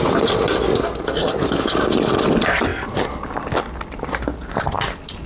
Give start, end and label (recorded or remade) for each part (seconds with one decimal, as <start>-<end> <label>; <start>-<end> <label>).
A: 0.0-5.3 recorded